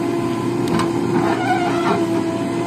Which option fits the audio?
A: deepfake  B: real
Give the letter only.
B